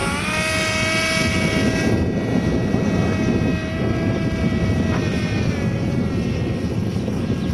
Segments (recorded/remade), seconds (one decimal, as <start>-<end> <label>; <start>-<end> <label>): 0.0-7.5 recorded